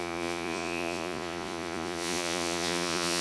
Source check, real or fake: fake